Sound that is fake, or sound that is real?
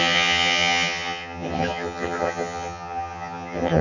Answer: fake